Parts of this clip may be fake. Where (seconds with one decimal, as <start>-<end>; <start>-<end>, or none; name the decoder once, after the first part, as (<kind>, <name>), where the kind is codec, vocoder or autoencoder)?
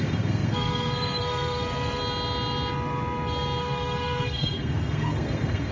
0.0-2.0 (codec, SNAC); 3.6-5.7